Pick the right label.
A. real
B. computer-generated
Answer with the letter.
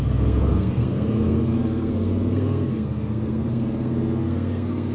B